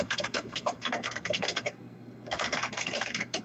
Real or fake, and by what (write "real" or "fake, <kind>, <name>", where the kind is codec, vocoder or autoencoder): fake, codec, SNAC